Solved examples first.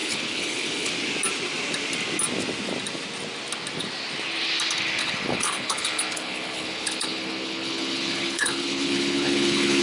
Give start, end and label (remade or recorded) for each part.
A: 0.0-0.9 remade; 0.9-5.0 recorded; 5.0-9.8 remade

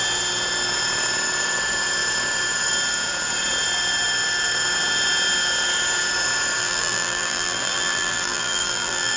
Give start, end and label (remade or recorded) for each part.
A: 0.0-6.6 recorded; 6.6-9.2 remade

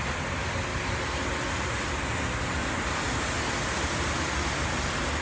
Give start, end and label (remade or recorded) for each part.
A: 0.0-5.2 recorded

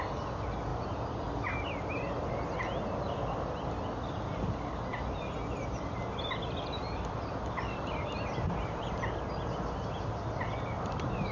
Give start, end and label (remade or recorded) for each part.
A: 0.0-11.3 recorded

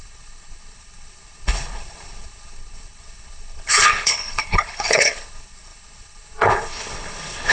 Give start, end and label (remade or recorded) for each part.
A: 0.0-7.5 remade

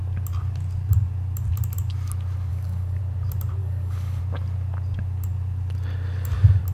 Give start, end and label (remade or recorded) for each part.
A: 0.0-2.5 recorded; 2.5-3.0 remade; 3.0-3.6 recorded; 3.6-4.2 remade; 4.2-6.7 recorded